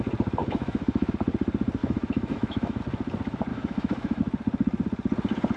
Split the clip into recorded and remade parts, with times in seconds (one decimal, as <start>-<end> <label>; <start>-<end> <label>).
0.0-0.4 recorded; 0.4-1.1 remade; 1.1-1.8 recorded; 1.8-2.8 remade; 2.8-3.5 recorded; 3.5-4.2 remade; 4.2-5.6 recorded